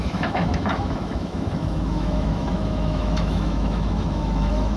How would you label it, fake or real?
fake